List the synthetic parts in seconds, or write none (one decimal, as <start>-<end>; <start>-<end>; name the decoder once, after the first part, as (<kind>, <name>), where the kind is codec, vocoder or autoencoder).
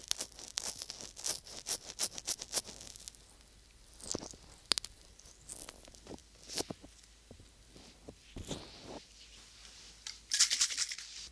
none